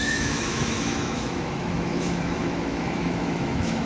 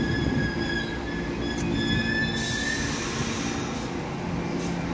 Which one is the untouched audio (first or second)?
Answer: second